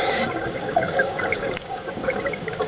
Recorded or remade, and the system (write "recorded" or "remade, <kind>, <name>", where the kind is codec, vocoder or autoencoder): remade, codec, DAC